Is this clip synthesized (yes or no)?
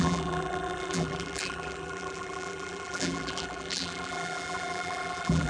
yes